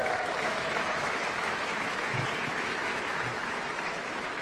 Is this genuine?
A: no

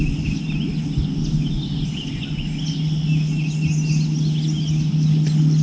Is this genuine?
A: yes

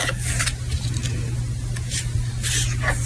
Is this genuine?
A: yes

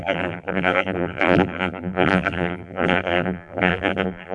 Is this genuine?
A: no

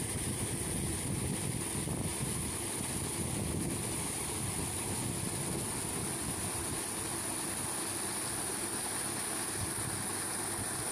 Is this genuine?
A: yes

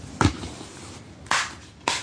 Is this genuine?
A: yes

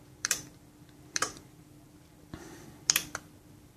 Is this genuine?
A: no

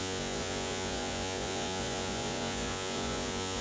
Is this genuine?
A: no